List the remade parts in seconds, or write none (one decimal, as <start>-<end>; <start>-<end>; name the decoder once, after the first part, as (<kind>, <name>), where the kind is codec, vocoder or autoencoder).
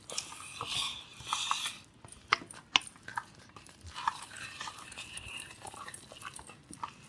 3.1-5.9 (vocoder, BigVGAN v2)